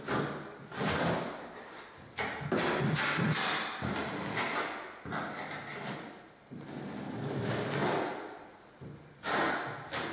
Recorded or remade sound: recorded